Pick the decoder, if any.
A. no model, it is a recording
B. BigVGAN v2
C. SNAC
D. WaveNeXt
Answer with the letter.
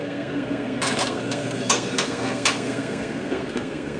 C